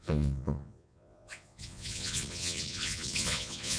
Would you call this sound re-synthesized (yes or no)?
yes